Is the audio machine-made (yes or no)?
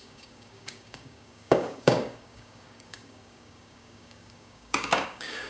yes